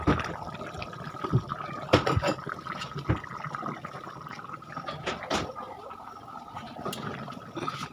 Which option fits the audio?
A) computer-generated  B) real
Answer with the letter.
B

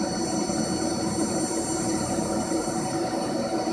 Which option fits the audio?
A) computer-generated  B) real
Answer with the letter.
A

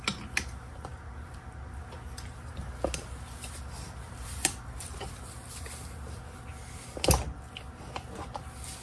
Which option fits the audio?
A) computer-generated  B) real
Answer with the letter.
B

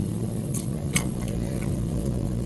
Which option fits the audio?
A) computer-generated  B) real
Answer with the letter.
A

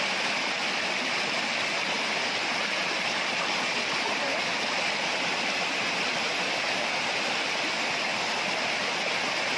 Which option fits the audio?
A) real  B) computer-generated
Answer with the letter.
A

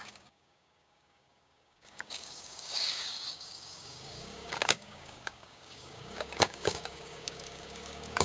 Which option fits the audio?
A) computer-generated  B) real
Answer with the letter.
A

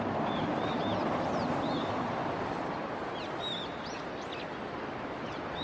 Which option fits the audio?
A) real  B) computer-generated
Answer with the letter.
A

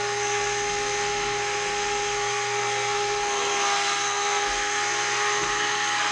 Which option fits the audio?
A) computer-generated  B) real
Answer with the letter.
A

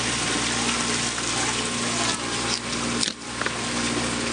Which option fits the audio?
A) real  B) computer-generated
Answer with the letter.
A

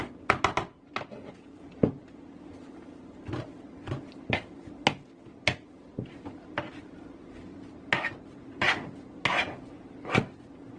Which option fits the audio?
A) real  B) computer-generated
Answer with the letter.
A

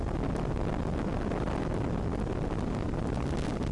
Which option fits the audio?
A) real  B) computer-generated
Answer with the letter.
A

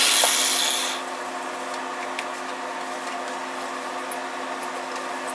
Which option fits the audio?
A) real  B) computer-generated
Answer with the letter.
A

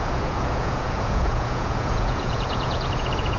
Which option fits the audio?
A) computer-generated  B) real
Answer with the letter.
A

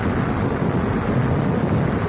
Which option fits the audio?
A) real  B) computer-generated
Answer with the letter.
A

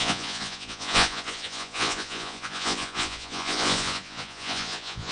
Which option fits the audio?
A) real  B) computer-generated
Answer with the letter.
B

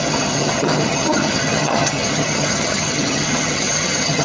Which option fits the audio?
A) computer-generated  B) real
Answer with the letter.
A